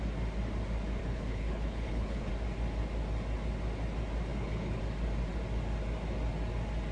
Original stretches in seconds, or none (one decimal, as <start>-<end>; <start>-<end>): 0.0-1.0; 2.3-4.3; 4.8-6.9